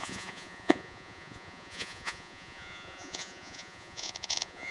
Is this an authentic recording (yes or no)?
no